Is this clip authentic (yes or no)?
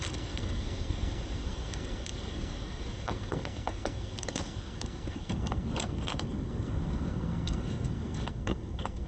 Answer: no